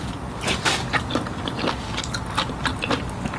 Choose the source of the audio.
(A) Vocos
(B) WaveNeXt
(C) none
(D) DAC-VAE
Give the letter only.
C